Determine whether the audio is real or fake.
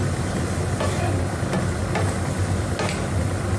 real